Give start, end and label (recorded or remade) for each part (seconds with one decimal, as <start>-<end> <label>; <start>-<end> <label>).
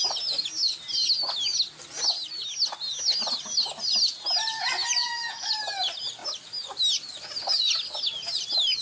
0.0-5.0 recorded; 5.0-5.5 remade; 5.5-8.8 recorded